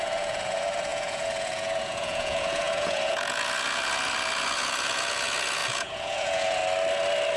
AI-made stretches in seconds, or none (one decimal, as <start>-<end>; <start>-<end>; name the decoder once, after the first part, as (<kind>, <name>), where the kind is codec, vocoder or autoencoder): 0.0-6.6 (vocoder, Vocos)

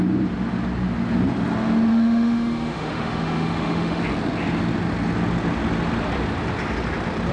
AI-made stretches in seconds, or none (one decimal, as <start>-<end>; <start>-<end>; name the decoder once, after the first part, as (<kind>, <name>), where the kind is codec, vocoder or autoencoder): 1.9-4.0 (autoencoder, DAC-VAE)

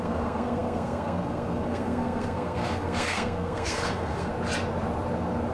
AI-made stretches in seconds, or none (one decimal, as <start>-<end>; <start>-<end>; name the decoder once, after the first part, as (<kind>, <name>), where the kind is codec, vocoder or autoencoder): 0.0-4.3 (codec, SNAC)

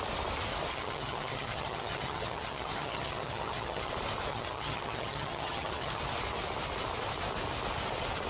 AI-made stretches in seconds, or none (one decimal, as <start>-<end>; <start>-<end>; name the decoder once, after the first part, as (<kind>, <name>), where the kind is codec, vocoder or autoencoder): 0.7-3.9 (vocoder, HiFi-GAN); 4.3-6.0

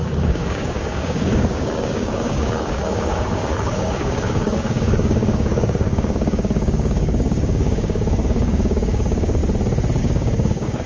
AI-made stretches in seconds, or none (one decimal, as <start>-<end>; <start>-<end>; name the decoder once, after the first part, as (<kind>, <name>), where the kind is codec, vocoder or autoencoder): 0.0-9.4 (codec, DAC); 10.0-10.9

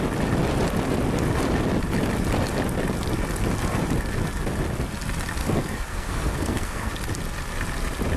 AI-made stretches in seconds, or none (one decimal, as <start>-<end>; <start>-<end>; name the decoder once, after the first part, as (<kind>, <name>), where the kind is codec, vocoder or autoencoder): 5.4-6.9 (codec, SNAC)

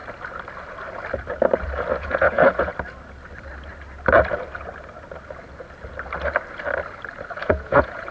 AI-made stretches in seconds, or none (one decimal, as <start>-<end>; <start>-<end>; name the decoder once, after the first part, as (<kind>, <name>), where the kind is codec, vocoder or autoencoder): 2.0-2.7 (vocoder, Vocos); 7.4-8.1